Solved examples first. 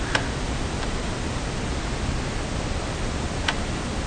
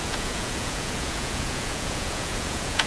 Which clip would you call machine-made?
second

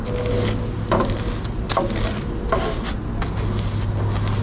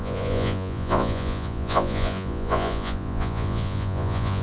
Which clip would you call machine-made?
second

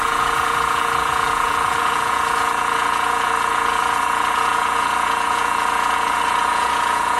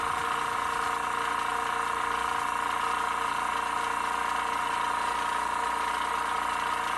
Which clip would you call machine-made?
first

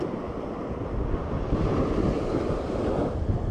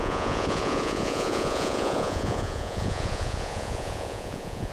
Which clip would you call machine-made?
second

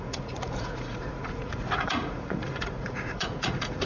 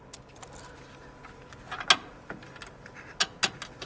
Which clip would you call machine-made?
first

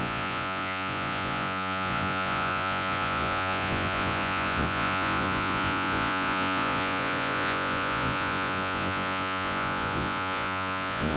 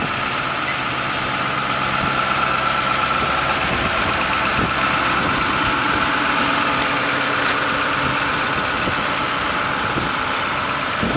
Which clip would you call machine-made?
first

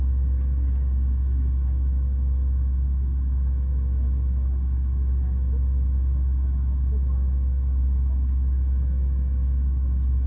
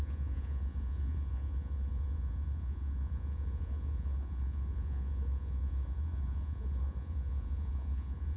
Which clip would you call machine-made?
second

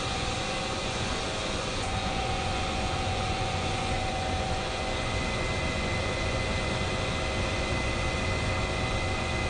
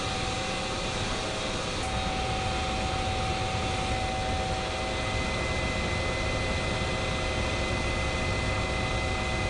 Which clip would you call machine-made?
first